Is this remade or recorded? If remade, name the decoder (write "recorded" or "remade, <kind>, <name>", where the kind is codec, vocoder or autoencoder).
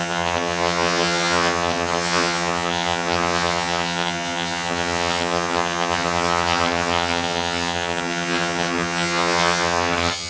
remade, vocoder, HiFi-GAN